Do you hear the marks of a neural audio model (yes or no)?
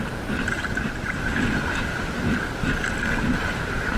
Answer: no